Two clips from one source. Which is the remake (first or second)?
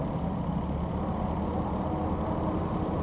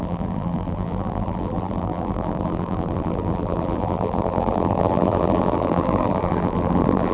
second